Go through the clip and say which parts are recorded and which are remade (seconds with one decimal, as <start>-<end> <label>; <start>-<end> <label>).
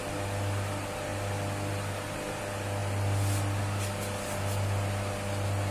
0.0-5.7 recorded